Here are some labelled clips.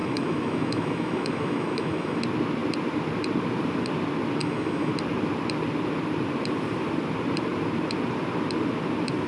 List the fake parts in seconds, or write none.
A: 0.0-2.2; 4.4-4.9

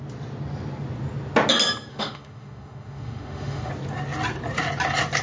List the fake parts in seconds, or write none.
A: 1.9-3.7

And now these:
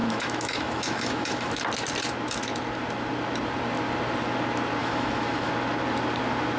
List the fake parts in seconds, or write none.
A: 0.0-1.6; 4.8-5.5

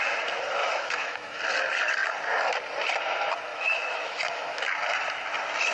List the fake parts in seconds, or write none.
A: 0.6-1.4; 3.5-4.7

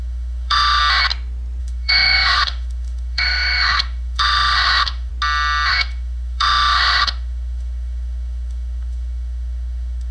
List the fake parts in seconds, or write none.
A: 0.0-0.8; 1.6-5.1; 5.7-10.1

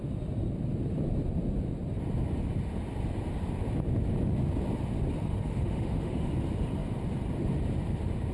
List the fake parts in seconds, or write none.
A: 5.3-6.3

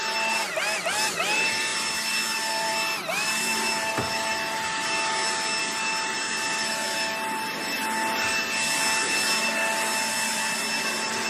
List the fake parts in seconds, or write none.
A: none

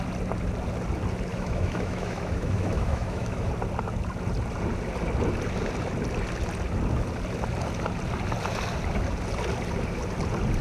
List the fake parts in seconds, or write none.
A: 1.3-3.5